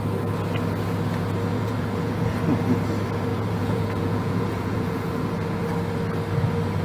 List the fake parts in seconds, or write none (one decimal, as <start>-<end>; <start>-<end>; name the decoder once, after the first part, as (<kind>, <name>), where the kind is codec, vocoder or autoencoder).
1.5-2.4 (vocoder, Vocos); 3.3-5.6